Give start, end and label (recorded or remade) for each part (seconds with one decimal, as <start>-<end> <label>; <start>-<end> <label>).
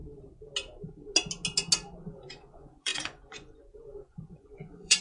0.0-2.0 recorded; 2.0-5.0 remade